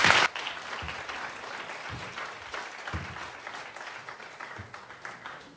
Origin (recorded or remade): recorded